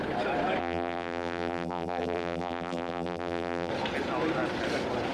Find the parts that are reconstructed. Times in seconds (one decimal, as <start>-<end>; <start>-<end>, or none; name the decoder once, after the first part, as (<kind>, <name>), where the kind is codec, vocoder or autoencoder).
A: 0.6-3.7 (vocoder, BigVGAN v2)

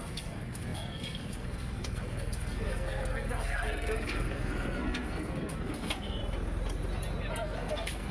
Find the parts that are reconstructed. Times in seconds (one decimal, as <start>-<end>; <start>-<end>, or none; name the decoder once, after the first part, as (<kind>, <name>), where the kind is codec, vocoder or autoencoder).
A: 0.0-6.2 (codec, SNAC); 7.3-8.1

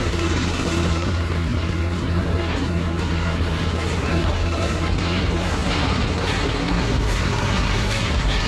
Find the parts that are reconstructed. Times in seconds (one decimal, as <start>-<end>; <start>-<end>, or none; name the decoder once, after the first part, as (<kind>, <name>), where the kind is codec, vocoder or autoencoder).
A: 0.0-8.5 (codec, SNAC)

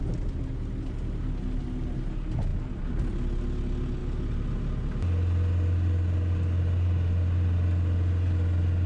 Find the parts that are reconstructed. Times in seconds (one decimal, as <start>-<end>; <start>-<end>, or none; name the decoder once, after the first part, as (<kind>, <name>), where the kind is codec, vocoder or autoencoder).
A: none

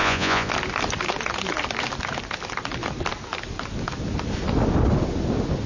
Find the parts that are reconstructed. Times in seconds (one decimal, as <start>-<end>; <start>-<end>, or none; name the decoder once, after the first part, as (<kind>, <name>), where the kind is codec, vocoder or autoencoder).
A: 0.0-0.5 (vocoder, Vocos)

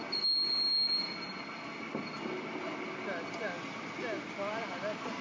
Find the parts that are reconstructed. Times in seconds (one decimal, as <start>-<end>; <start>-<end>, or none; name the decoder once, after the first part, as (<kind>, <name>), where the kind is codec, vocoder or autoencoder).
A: none

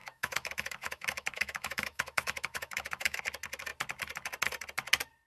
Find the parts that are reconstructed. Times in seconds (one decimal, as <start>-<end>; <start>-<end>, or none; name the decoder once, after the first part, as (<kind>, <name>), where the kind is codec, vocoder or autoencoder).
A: 0.0-3.2 (autoencoder, DAC-VAE)